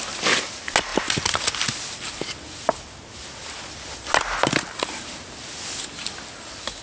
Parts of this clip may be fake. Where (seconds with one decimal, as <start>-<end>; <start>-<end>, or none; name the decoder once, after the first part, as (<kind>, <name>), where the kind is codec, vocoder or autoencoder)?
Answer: none